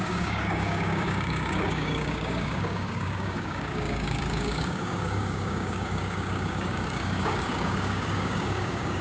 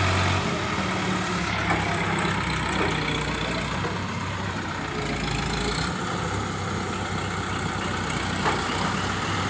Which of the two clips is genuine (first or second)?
second